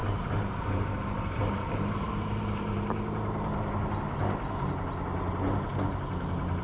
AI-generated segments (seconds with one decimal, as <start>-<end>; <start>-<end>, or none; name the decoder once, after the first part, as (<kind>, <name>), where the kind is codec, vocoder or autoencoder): 0.0-3.7 (vocoder, BigVGAN v2)